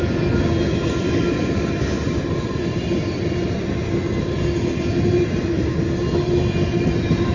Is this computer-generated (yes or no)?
no